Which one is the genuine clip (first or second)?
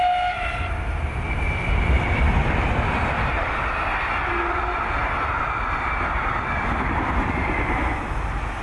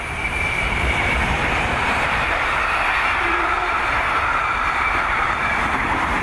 first